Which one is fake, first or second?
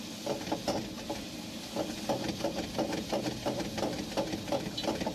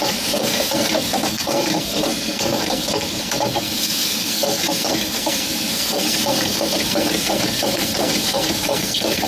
second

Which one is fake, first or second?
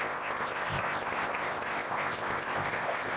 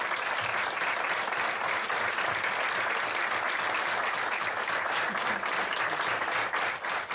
first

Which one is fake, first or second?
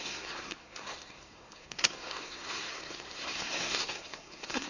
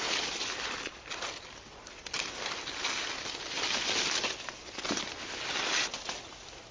first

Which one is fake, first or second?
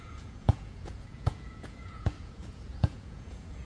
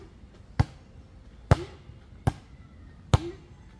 first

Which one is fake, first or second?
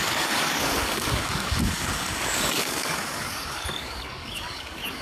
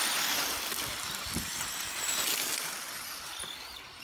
first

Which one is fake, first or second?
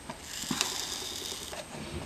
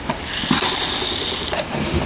second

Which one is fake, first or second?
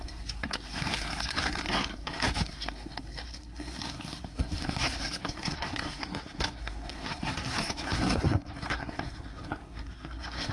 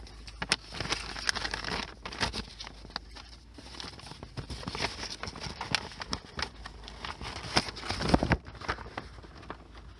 first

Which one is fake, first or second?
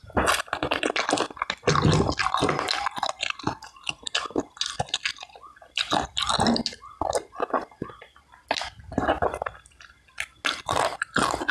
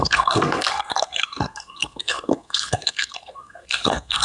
second